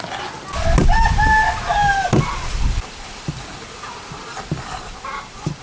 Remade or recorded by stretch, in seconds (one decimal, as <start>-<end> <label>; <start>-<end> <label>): 0.0-1.8 recorded; 1.8-5.6 remade

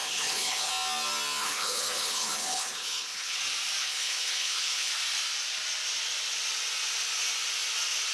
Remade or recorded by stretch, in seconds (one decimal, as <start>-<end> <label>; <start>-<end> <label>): 0.0-0.7 remade; 0.7-1.4 recorded; 1.4-3.4 remade; 3.4-3.8 recorded; 3.8-4.9 remade; 4.9-8.1 recorded

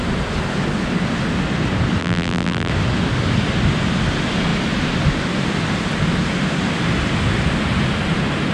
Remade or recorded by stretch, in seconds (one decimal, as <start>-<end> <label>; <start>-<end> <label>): 0.0-2.0 recorded; 2.0-2.7 remade; 2.7-8.5 recorded

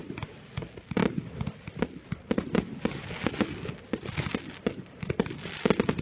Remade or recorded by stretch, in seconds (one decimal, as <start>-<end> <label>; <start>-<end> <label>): 0.0-6.0 recorded

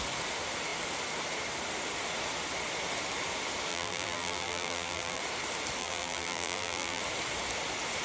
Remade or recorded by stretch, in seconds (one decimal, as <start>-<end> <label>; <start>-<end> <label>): 0.0-3.7 recorded; 3.7-5.2 remade; 5.2-5.8 recorded; 5.8-7.0 remade; 7.0-8.0 recorded